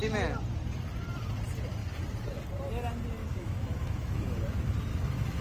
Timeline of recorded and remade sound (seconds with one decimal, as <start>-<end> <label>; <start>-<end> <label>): 0.0-3.2 recorded; 3.2-4.4 remade; 4.4-4.9 recorded; 4.9-5.4 remade